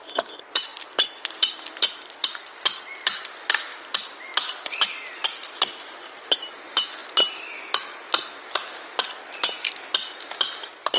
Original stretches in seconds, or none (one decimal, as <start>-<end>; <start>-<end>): 0.0-11.0